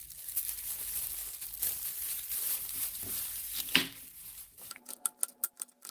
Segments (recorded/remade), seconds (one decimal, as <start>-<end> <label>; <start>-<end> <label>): 0.0-2.0 recorded; 2.0-5.5 remade; 5.5-5.9 recorded